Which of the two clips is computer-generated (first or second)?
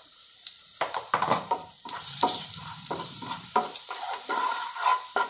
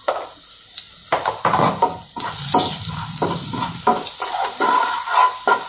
first